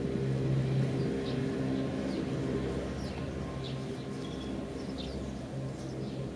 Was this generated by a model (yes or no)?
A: no